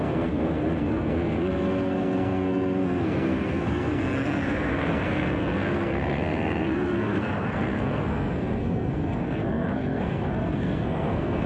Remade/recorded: remade